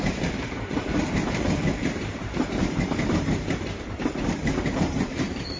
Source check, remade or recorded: remade